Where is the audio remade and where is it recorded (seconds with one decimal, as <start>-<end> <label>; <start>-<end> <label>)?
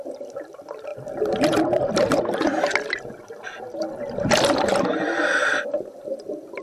0.0-6.6 recorded